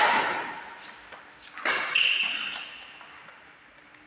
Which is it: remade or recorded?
recorded